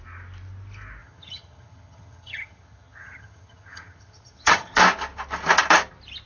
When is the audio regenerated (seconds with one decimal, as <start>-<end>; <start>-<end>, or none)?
1.0-4.8